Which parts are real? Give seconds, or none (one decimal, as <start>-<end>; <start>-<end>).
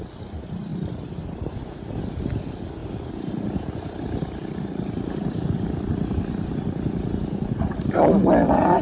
0.0-0.7; 2.0-2.8; 7.9-8.8